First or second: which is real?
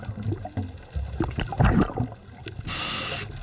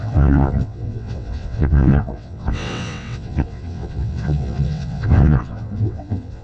first